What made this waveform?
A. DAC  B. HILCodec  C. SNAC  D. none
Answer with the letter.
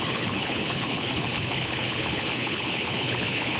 B